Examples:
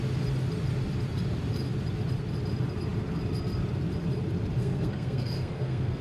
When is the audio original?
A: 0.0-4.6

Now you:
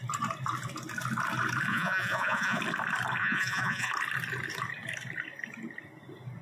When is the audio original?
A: 0.0-1.7; 2.6-3.2; 3.9-6.4

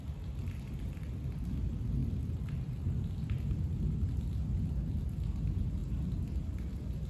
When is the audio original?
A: 0.0-7.1